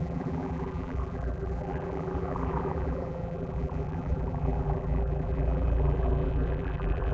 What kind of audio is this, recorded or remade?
remade